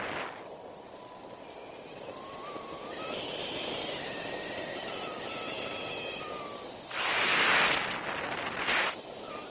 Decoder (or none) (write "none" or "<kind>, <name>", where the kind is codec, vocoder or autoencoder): none